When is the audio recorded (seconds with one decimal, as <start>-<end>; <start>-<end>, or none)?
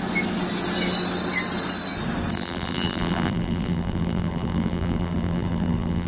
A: 0.0-2.3